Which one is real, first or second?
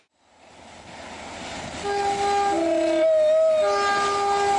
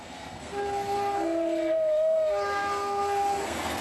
first